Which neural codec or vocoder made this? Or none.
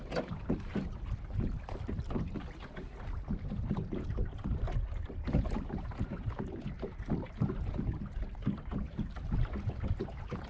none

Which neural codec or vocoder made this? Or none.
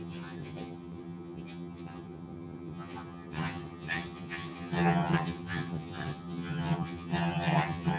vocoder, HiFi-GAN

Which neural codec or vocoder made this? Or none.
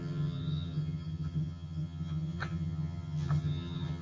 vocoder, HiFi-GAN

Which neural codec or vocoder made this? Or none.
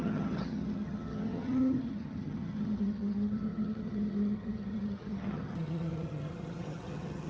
vocoder, HiFi-GAN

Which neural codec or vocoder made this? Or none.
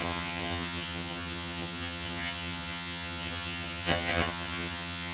vocoder, HiFi-GAN